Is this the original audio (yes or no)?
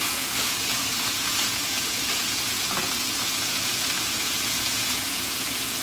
no